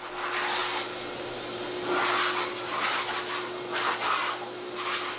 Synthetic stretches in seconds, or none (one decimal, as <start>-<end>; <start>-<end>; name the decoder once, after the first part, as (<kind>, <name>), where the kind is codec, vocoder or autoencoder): none